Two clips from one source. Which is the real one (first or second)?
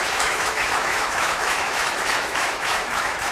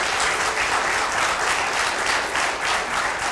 second